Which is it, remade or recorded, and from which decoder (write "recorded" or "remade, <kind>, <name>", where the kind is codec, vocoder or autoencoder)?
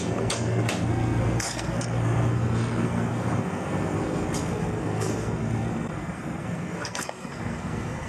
remade, codec, SNAC